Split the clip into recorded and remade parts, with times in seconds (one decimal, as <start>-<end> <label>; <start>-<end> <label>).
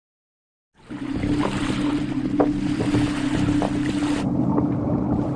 0.0-5.4 recorded